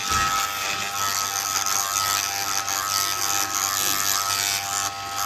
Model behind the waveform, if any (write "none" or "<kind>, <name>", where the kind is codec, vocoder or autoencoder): none